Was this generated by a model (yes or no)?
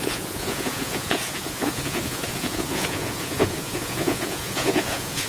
yes